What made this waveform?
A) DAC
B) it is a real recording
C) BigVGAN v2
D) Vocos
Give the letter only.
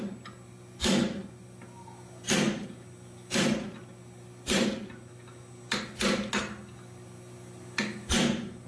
B